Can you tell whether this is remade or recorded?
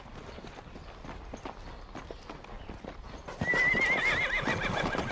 recorded